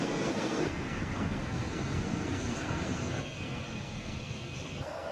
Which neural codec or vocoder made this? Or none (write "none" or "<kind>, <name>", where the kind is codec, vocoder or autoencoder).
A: codec, SNAC